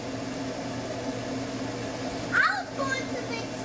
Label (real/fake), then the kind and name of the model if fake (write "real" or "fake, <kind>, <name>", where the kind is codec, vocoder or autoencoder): real